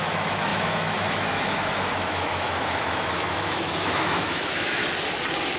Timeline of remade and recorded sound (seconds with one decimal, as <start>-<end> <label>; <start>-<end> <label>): 0.0-4.8 remade; 4.8-5.6 recorded